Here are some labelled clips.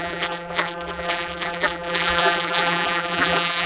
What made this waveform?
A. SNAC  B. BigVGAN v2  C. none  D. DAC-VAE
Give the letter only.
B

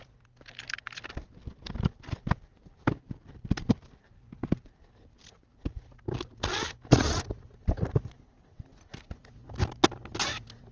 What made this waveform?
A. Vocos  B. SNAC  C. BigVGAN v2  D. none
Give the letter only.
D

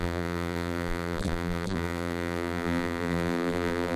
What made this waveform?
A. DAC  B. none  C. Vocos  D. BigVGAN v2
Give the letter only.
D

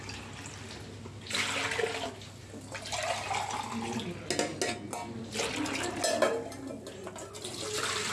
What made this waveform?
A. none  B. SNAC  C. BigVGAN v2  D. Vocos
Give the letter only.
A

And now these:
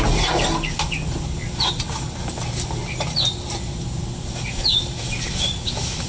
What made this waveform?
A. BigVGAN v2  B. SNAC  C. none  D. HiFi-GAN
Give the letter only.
C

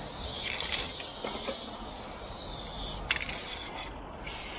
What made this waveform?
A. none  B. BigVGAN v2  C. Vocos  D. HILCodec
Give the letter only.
A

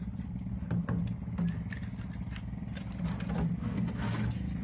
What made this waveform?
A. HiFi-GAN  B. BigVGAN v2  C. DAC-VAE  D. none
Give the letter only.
D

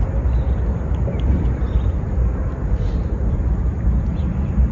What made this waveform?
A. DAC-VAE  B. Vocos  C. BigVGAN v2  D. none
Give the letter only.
C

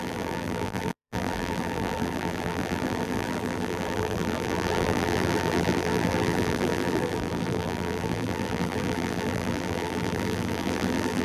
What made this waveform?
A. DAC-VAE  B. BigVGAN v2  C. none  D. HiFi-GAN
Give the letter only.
B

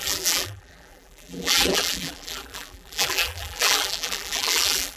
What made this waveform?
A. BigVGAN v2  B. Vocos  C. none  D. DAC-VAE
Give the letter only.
A